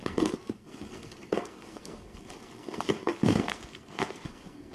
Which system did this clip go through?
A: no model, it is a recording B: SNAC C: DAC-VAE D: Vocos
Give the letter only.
B